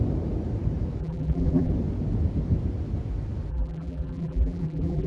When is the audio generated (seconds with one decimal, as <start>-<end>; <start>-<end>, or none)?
1.0-1.7; 3.5-5.1